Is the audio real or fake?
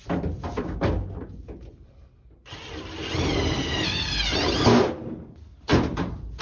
real